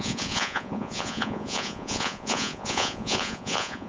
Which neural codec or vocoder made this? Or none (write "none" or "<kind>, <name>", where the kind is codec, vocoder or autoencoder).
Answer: vocoder, Vocos